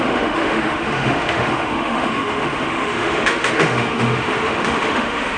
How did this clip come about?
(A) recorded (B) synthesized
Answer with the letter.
B